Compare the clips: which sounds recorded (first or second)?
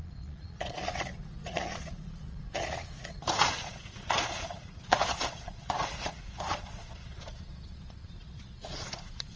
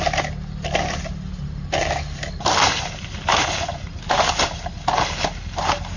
second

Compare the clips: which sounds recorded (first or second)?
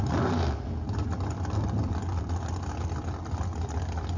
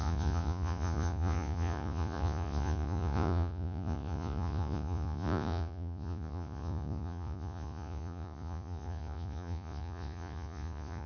first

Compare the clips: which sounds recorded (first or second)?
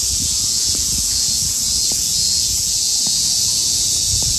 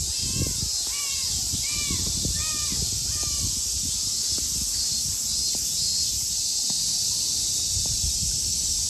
second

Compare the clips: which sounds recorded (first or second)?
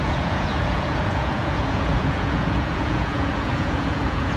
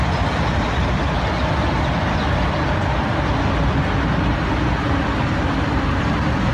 second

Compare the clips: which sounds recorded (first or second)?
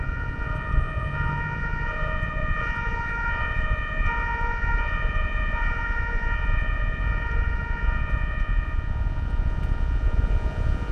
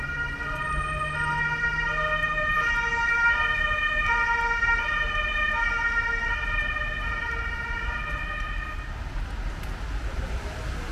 second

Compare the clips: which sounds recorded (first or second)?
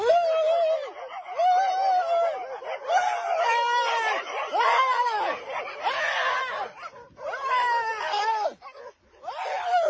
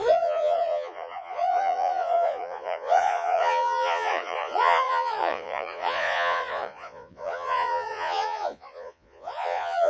first